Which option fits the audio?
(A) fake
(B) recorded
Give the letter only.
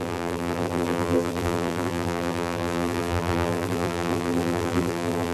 A